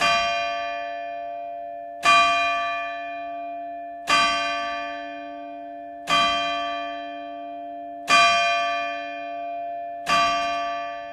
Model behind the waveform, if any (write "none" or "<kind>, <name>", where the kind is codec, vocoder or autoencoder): none